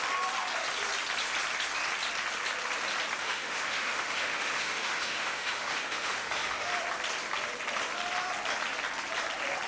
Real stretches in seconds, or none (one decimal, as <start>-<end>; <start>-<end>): 0.0-3.2; 6.7-9.7